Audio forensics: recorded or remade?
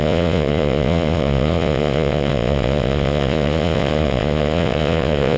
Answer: remade